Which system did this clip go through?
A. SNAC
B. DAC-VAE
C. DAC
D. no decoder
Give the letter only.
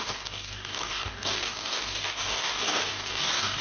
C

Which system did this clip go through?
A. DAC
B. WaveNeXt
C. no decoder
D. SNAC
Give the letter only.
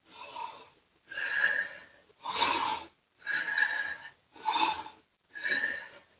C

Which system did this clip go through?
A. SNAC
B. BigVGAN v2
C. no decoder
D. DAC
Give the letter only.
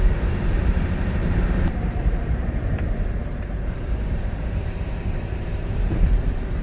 B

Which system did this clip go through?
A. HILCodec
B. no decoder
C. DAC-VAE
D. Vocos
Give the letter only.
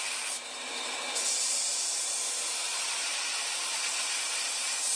B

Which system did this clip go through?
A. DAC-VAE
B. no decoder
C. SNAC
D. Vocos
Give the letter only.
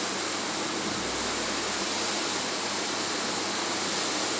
B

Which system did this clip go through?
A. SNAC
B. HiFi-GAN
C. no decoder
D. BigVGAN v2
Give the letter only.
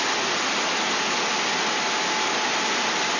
C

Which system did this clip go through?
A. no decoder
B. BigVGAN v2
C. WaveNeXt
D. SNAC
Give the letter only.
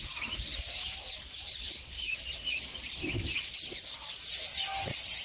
A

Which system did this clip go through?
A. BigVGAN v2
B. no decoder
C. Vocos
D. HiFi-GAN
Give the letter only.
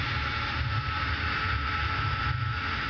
B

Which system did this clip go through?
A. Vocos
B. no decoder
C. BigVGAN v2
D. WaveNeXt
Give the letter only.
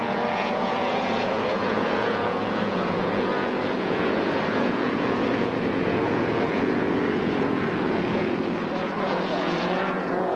A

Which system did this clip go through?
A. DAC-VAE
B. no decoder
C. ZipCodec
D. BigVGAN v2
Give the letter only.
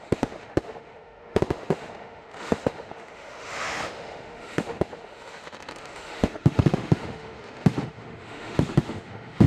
A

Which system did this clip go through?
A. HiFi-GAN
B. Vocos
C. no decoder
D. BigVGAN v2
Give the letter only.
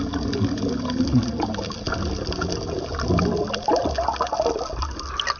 C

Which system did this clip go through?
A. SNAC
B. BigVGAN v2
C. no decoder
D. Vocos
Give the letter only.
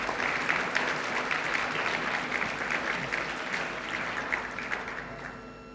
C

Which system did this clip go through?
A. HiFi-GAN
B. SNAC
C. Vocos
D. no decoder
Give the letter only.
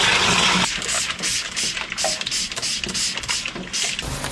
D